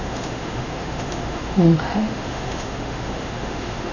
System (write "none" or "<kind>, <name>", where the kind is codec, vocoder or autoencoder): autoencoder, DAC-VAE